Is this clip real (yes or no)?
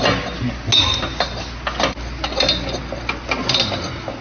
yes